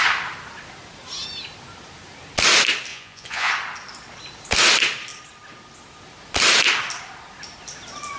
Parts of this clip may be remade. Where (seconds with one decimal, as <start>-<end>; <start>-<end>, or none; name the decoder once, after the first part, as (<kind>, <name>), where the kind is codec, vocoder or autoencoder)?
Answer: 2.9-3.5 (vocoder, Vocos)